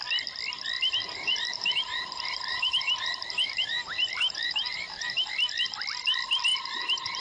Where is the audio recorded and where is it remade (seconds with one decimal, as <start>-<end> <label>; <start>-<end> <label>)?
0.0-1.0 recorded; 1.0-5.3 remade; 5.3-6.5 recorded; 6.5-7.2 remade